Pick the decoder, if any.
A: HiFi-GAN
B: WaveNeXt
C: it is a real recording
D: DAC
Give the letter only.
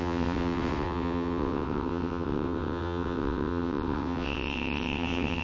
B